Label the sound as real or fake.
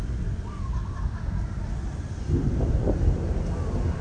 real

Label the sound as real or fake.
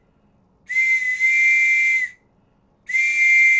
real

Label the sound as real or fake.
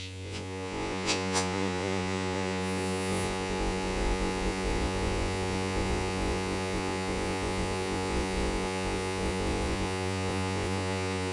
fake